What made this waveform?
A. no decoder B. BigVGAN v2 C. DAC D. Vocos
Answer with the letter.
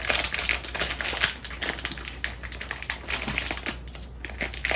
A